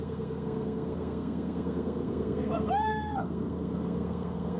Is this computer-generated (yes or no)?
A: yes